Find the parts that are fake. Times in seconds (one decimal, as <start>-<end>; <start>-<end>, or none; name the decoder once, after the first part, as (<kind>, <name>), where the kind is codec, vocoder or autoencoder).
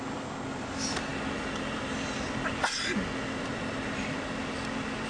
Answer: none